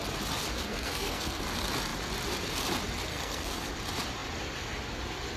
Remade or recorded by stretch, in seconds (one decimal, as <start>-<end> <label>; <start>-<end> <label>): 0.0-0.5 recorded; 0.5-1.4 remade; 1.4-3.1 recorded; 3.1-3.7 remade; 3.7-5.4 recorded